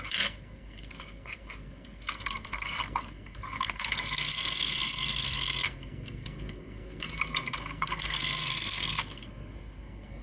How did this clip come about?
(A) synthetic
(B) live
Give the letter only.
A